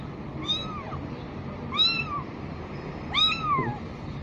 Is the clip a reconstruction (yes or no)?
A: yes